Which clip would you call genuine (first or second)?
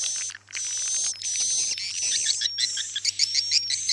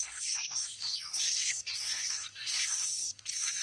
first